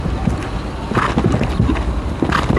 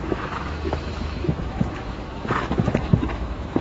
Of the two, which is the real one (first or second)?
first